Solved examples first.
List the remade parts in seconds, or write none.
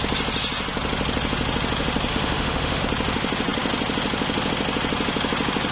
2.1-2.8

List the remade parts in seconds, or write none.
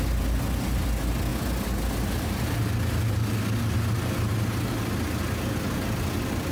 none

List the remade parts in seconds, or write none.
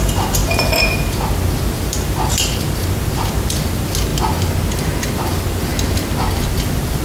0.0-4.1; 5.1-5.7; 6.6-7.0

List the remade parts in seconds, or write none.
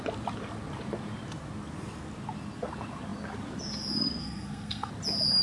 4.2-4.9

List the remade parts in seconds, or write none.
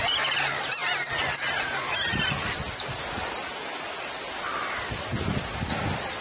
none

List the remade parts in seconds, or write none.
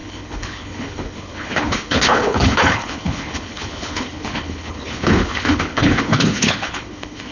0.0-7.3